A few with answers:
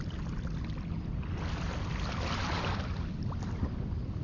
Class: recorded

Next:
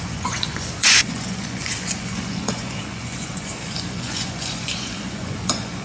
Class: remade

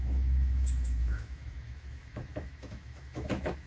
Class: remade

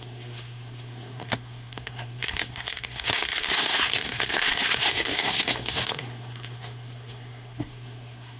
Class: remade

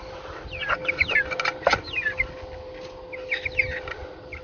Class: recorded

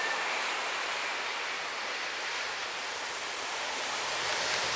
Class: recorded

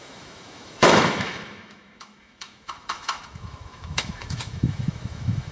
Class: remade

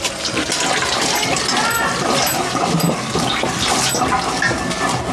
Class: recorded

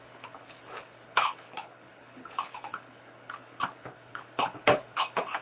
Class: remade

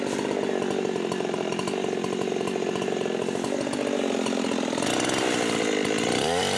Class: recorded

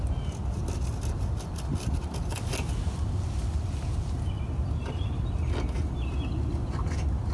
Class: recorded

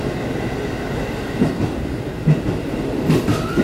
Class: recorded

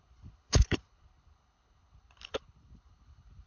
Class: remade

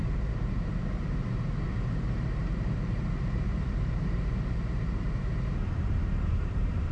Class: remade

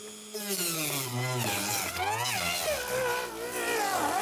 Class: recorded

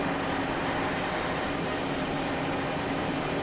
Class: remade